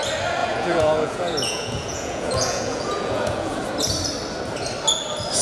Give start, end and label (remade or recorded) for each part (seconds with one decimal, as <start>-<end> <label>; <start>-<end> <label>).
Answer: 0.0-0.4 recorded; 0.4-3.6 remade; 3.6-5.4 recorded